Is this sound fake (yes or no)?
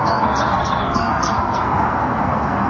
yes